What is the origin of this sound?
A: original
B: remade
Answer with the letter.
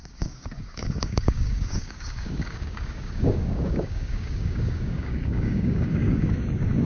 B